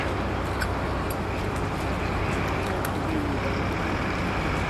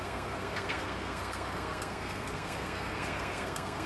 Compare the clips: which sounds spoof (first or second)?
second